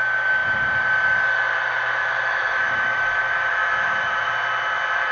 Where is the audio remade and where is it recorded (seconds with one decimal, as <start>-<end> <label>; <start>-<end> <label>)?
0.0-2.0 recorded; 2.0-4.3 remade; 4.3-5.1 recorded